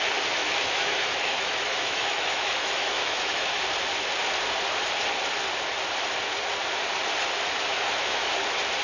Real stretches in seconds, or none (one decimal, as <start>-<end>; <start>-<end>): 0.0-0.4; 3.5-7.7; 8.3-8.8